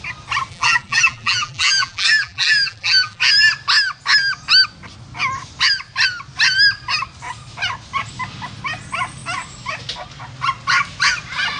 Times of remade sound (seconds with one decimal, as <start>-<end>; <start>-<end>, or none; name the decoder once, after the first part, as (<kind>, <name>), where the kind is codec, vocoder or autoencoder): 0.5-3.2 (vocoder, BigVGAN v2)